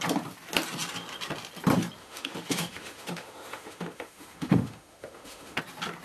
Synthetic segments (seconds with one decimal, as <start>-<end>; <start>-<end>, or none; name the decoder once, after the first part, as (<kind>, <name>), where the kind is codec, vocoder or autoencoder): 2.0-5.6 (autoencoder, DAC-VAE)